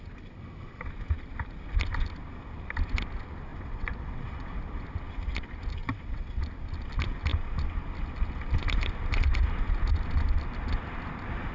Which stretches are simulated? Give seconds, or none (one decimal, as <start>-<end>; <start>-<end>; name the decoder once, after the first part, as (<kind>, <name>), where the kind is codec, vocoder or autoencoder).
3.5-4.6 (vocoder, WaveNeXt); 5.8-6.4

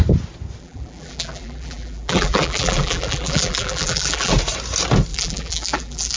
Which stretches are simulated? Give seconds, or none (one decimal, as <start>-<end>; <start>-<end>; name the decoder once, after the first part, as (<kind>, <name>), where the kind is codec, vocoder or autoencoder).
0.6-4.3 (vocoder, BigVGAN v2); 5.1-6.2

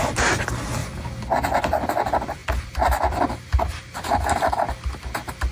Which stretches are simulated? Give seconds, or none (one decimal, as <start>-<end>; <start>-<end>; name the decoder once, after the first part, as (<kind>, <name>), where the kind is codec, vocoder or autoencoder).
none

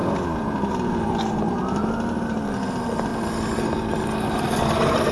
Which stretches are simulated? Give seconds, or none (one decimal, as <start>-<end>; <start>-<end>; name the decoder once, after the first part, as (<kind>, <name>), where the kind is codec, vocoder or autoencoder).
0.0-1.1 (vocoder, BigVGAN v2)

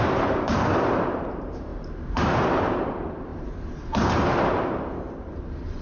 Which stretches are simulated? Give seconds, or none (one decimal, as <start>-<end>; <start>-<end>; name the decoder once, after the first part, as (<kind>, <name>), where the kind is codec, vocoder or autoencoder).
0.0-5.8 (vocoder, BigVGAN v2)

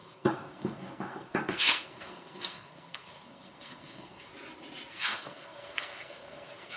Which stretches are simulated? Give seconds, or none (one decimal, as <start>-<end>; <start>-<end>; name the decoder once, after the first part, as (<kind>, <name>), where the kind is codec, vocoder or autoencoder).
0.0-4.3 (codec, SNAC); 4.9-6.8